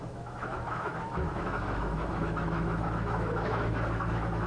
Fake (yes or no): yes